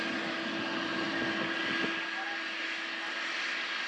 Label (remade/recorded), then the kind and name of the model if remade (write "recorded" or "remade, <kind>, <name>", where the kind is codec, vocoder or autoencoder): recorded